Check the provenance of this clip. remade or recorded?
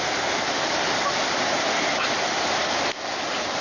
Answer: recorded